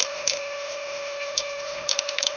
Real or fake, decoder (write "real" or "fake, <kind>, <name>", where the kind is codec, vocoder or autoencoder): fake, autoencoder, DAC-VAE